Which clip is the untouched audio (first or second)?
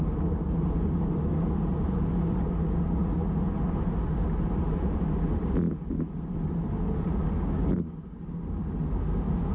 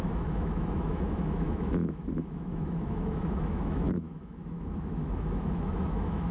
first